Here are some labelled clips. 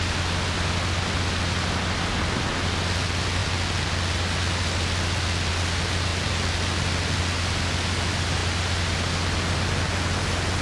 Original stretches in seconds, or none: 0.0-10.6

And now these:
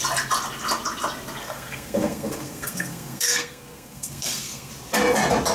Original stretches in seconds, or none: 0.0-1.4; 4.7-5.5